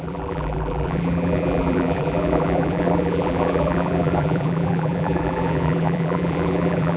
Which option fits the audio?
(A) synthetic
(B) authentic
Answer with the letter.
A